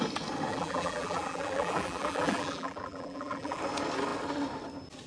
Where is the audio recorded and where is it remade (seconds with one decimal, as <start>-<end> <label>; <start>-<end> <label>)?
0.0-0.5 recorded; 0.5-3.6 remade; 3.6-5.1 recorded

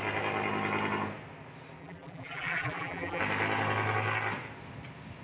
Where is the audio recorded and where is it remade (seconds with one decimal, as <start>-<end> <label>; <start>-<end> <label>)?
0.0-1.8 recorded; 1.8-3.2 remade; 3.2-5.2 recorded

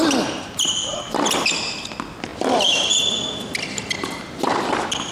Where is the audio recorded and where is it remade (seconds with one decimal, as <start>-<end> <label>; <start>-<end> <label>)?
0.0-5.1 recorded

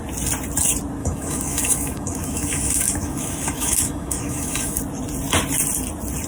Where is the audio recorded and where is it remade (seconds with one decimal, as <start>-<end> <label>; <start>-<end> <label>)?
0.0-1.0 recorded; 1.0-4.8 remade; 4.8-6.3 recorded